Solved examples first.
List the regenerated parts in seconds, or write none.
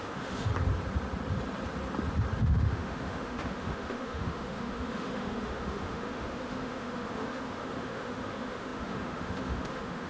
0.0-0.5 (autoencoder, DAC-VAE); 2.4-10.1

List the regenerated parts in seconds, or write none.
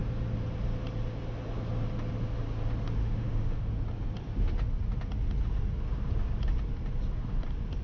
3.0-3.7 (autoencoder, DAC-VAE)